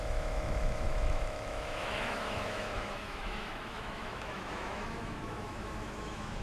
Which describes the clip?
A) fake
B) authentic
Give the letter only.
A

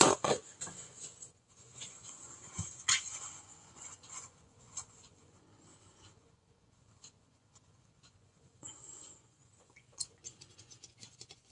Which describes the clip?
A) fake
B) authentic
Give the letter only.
A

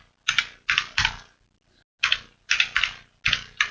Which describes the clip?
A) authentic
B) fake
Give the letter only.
A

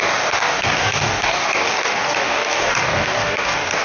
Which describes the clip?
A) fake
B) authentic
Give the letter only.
A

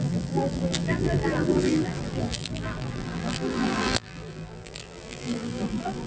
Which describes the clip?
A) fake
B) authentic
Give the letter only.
A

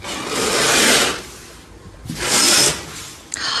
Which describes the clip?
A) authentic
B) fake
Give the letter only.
A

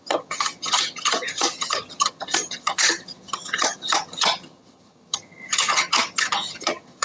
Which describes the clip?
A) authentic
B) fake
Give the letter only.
B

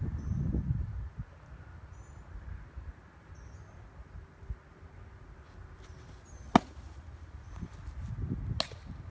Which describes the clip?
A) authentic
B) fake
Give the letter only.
A